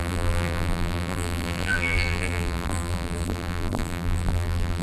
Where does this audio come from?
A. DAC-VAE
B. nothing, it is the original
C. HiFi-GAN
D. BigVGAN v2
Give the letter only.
D